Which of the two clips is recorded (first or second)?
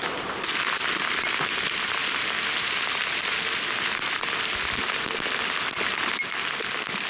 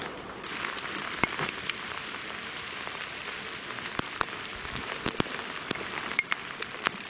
first